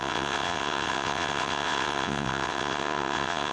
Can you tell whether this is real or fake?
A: fake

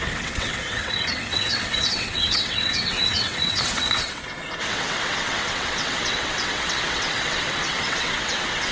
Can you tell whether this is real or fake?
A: fake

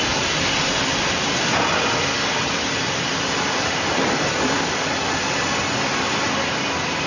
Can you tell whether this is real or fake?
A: real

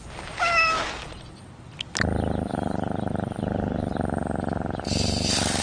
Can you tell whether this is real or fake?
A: real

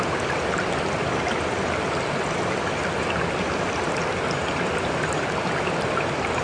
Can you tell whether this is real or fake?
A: real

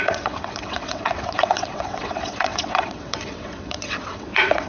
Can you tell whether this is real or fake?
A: fake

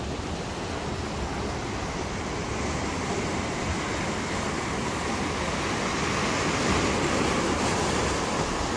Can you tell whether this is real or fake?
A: real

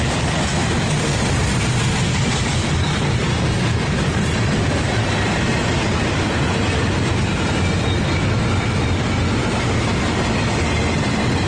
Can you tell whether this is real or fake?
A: real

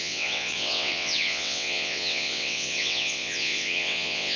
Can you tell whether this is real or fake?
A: fake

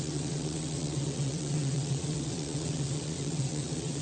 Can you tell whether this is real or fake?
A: fake